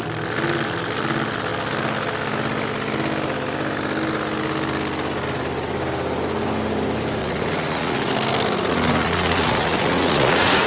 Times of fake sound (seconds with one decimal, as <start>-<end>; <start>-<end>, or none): 7.2-8.1; 8.7-10.7